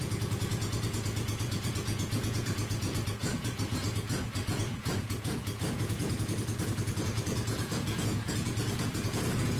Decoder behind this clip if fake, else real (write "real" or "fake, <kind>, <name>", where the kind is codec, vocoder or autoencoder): fake, vocoder, Vocos